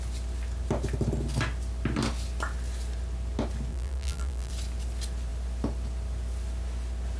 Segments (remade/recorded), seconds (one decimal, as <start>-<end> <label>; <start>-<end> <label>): 0.0-3.7 recorded; 3.7-4.5 remade; 4.5-7.2 recorded